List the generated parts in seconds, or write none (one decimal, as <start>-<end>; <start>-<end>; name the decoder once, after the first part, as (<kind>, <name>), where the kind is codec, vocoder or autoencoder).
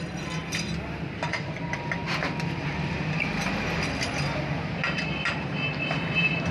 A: 0.0-0.4 (vocoder, BigVGAN v2); 1.0-2.0; 4.7-6.5